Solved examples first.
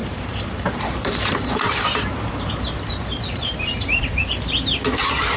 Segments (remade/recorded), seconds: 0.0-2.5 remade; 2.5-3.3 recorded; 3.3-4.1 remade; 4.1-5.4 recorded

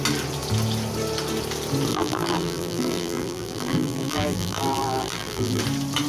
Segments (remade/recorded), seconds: 0.0-1.9 recorded; 1.9-5.6 remade; 5.6-6.1 recorded

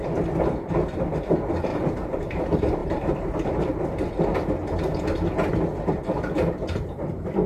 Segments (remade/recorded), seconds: 0.0-1.7 recorded; 1.7-2.4 remade; 2.4-2.8 recorded; 2.8-3.6 remade; 3.6-7.5 recorded

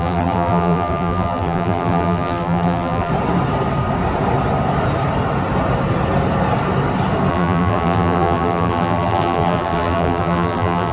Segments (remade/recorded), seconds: 0.0-3.1 remade; 3.1-7.3 recorded; 7.3-10.9 remade

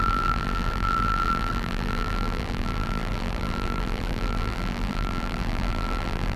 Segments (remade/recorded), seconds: 0.0-6.4 remade

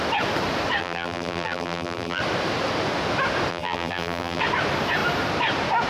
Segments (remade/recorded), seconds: 0.0-0.8 recorded; 0.8-2.2 remade; 2.2-3.5 recorded; 3.5-4.4 remade; 4.4-5.9 recorded

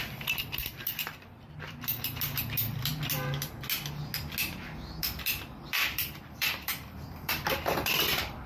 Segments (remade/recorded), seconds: 0.0-2.9 remade; 2.9-5.0 recorded; 5.0-8.5 remade